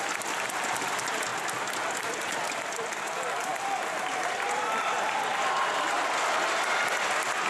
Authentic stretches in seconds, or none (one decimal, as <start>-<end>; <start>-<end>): 0.0-7.5